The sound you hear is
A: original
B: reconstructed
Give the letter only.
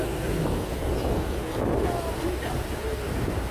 A